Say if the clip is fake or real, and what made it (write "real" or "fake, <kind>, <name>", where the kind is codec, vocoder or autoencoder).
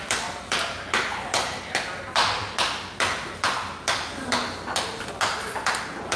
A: real